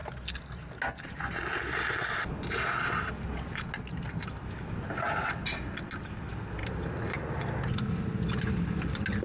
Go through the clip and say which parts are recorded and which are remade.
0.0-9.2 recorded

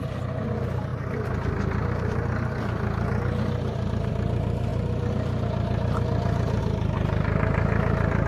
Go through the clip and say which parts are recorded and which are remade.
0.0-8.3 recorded

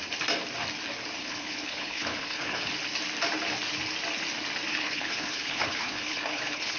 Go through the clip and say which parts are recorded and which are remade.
0.0-1.2 recorded; 1.2-2.7 remade; 2.7-4.7 recorded; 4.7-6.8 remade